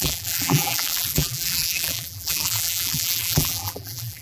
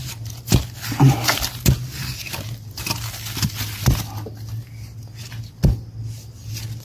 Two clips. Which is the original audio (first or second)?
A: second